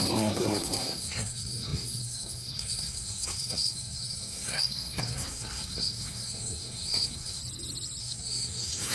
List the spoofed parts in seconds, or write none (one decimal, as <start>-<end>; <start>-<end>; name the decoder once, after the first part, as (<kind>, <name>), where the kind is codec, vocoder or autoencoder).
0.0-7.4 (codec, SNAC); 8.0-8.9